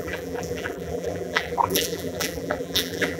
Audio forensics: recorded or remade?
remade